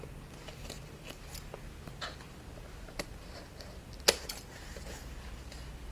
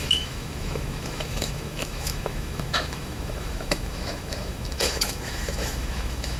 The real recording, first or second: first